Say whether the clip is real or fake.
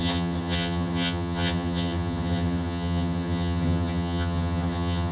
fake